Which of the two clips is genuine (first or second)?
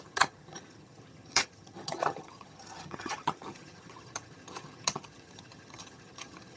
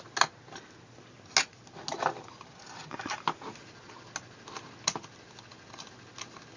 second